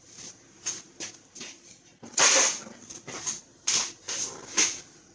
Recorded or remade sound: recorded